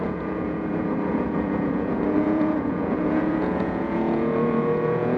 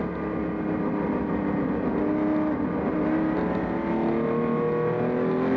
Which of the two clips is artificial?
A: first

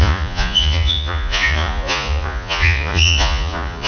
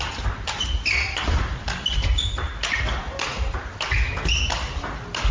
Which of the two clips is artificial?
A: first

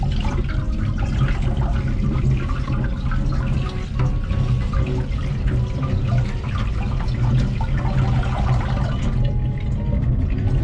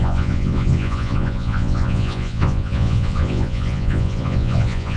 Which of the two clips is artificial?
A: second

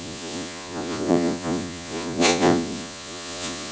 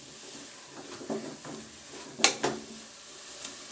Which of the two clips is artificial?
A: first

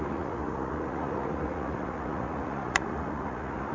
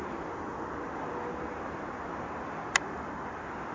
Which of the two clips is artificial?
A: first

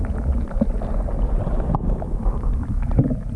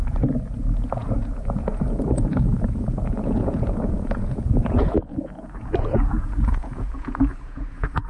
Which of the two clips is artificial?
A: second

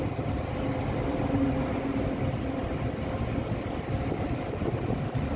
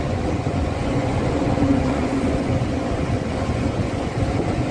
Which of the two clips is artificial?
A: second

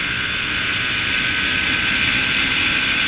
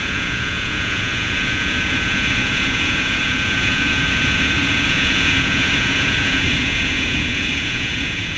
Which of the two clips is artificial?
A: second